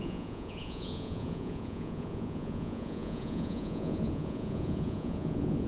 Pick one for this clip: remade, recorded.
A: remade